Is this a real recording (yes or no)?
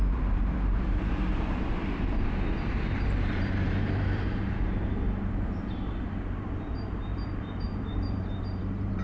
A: no